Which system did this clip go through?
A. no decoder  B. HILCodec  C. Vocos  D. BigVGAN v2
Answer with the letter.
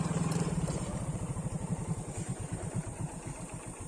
D